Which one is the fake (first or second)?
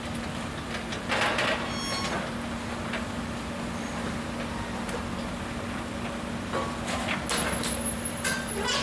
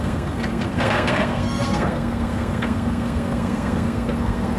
second